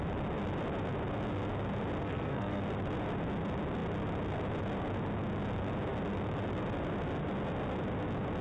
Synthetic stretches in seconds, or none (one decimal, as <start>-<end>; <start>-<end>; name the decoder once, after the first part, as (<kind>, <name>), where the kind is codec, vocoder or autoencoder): 2.0-2.6 (codec, SNAC)